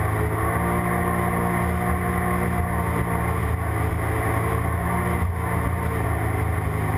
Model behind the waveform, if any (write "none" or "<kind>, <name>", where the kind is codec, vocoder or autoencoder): none